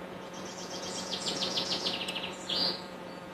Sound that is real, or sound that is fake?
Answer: fake